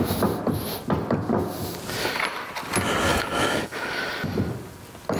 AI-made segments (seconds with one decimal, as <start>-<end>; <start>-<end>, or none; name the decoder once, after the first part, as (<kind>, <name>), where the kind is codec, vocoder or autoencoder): 3.1-4.1 (codec, DAC)